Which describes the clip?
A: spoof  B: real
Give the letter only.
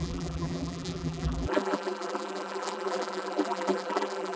A